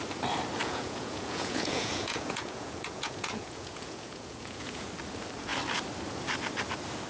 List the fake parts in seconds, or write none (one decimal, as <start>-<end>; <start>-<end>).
0.6-4.9